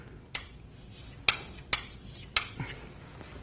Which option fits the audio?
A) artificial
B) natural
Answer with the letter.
B